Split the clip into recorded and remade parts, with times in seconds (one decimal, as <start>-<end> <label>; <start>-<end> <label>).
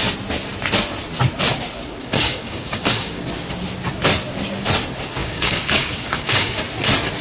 0.0-2.0 recorded; 2.0-3.2 remade; 3.2-5.2 recorded; 5.2-6.6 remade; 6.6-7.2 recorded